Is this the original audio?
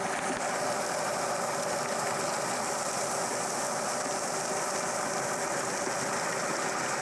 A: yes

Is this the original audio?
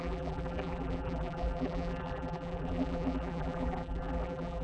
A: no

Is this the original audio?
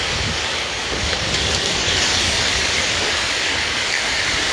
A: no